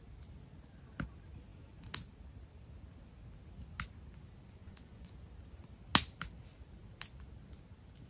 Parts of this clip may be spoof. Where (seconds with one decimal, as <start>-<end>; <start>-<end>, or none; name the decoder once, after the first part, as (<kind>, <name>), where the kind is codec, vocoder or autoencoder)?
4.6-5.1 (vocoder, Vocos)